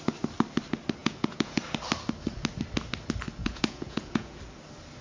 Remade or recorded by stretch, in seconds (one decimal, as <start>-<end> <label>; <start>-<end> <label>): 0.0-1.0 recorded; 1.0-1.6 remade; 1.6-3.4 recorded; 3.4-4.4 remade; 4.4-5.0 recorded